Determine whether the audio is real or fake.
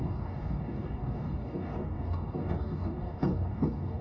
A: fake